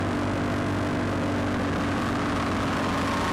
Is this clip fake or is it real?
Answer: real